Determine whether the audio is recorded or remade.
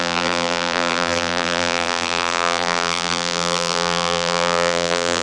remade